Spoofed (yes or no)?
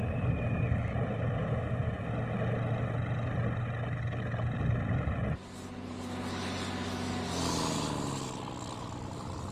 no